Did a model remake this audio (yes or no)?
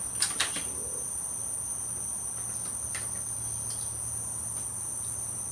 no